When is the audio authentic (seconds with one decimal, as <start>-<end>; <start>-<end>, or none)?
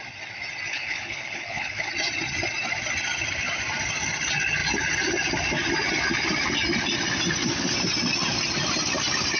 0.0-0.7; 1.9-9.4